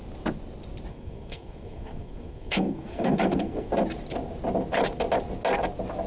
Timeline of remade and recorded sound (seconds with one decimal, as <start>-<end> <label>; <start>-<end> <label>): 0.0-0.9 recorded; 0.9-3.7 remade; 3.7-6.1 recorded